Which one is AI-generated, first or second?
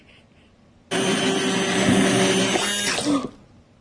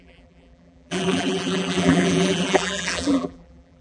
second